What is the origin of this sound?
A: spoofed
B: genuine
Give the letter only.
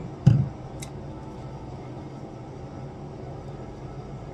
B